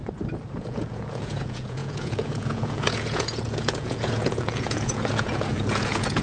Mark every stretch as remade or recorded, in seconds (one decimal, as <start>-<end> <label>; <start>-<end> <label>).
0.0-0.6 recorded; 0.6-6.2 remade